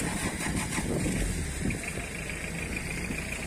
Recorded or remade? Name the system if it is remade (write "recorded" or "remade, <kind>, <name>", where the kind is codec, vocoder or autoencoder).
recorded